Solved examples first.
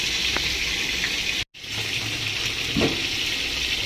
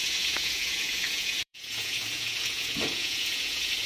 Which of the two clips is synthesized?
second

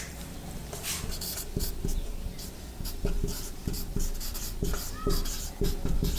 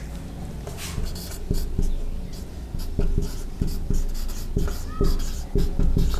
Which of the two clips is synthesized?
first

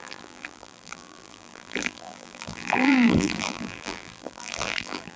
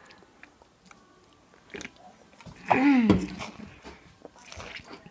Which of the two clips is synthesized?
first